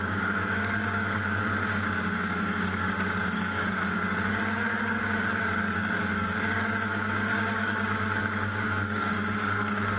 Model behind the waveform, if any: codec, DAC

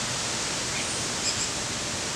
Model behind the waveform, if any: none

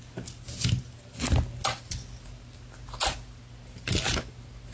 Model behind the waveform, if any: none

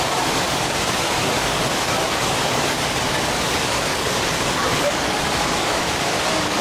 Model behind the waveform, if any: codec, DAC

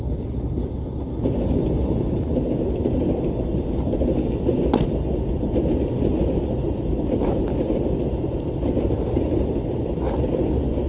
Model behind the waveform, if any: none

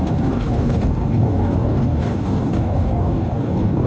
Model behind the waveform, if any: codec, DAC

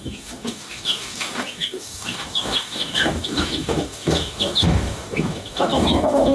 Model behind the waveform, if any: codec, DAC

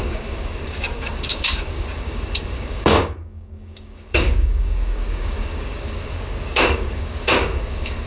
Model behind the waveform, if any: codec, DAC